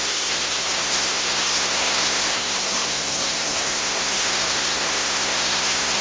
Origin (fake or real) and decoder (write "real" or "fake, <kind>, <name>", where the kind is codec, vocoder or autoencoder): fake, codec, SNAC